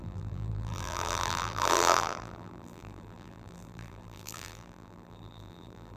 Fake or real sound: fake